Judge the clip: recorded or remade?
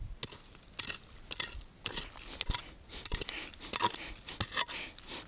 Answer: recorded